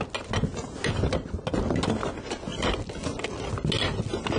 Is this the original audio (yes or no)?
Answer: yes